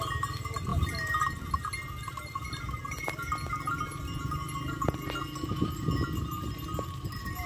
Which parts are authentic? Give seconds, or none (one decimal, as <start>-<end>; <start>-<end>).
0.0-7.5